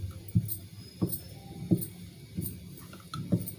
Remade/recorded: recorded